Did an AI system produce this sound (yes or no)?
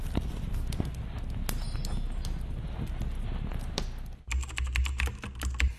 no